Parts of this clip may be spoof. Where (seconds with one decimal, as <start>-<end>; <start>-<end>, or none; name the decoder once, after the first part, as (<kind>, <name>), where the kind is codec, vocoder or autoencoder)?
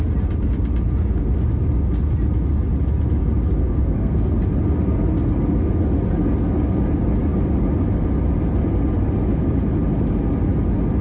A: 3.6-4.2 (codec, SNAC)